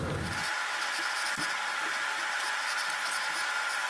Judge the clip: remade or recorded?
recorded